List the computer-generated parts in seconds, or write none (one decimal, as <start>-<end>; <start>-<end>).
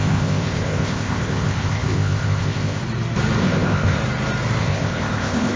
0.0-2.8; 3.4-4.0; 4.6-5.6